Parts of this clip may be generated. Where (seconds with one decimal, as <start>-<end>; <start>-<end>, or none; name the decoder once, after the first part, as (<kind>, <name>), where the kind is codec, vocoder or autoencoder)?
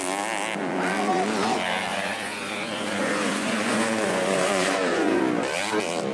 1.9-5.2 (vocoder, Vocos)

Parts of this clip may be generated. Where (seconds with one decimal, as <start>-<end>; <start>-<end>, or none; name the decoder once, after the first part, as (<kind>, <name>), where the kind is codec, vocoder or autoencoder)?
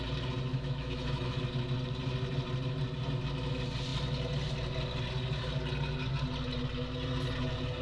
0.5-1.4 (autoencoder, DAC-VAE)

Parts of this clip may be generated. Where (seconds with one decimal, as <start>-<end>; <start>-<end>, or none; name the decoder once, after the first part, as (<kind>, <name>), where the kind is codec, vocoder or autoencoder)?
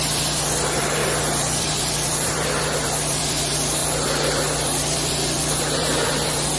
0.0-6.6 (vocoder, BigVGAN v2)